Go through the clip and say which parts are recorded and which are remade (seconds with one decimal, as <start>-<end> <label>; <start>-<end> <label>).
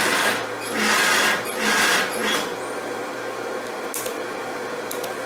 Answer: 0.0-5.3 recorded